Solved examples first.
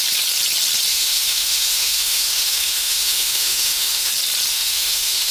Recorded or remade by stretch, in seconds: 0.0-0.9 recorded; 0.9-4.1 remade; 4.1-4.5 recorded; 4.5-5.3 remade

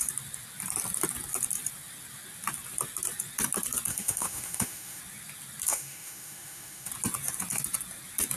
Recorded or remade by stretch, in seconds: 0.0-3.9 recorded; 3.9-5.0 remade; 5.0-5.7 recorded; 5.7-6.9 remade; 6.9-8.4 recorded